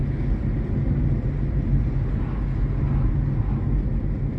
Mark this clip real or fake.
real